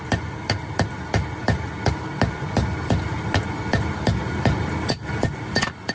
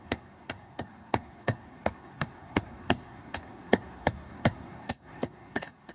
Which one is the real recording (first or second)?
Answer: first